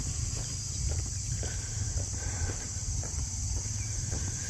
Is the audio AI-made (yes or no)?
yes